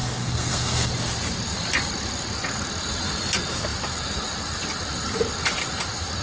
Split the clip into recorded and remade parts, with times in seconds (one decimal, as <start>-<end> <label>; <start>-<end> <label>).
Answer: 0.0-0.9 remade; 0.9-6.2 recorded